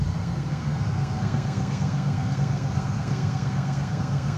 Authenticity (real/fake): fake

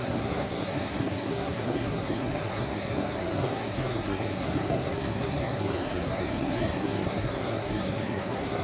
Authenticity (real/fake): fake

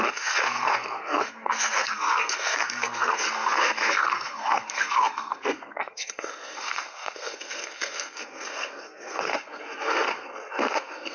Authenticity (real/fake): fake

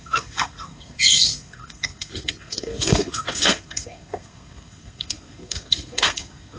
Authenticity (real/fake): fake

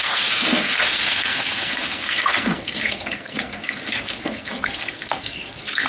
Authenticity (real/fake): fake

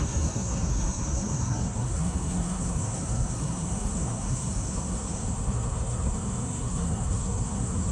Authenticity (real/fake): fake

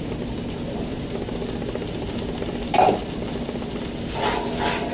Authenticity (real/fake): real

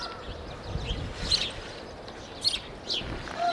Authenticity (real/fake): real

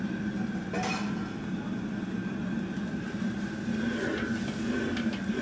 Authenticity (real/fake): real